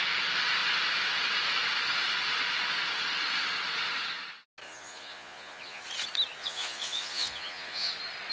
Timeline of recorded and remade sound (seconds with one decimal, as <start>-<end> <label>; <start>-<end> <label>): 0.0-4.6 recorded; 4.6-5.8 remade; 5.8-6.4 recorded; 6.4-7.9 remade; 7.9-8.3 recorded